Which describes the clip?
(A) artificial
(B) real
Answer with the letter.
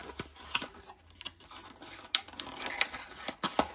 B